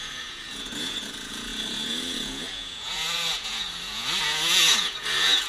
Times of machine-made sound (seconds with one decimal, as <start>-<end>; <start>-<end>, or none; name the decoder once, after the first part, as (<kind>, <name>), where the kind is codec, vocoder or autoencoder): 0.0-5.5 (vocoder, Vocos)